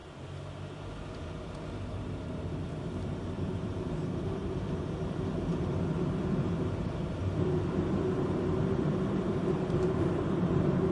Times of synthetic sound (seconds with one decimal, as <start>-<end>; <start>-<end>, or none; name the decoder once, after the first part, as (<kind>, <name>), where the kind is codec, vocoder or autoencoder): 1.8-10.9 (vocoder, BigVGAN v2)